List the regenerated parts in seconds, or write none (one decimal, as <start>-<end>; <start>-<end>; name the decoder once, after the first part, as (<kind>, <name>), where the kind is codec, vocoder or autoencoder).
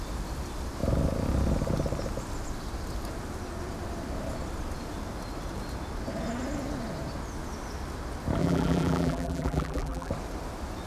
8.4-10.1 (vocoder, BigVGAN v2)